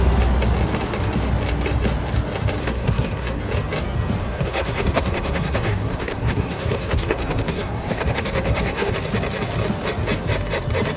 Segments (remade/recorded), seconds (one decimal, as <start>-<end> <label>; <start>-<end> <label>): 0.0-2.6 recorded; 2.6-3.4 remade; 3.4-4.2 recorded; 4.2-8.9 remade; 8.9-11.0 recorded